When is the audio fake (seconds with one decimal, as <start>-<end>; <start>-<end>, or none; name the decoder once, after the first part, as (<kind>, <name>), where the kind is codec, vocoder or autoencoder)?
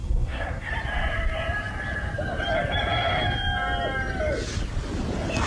0.0-0.7 (codec, SNAC)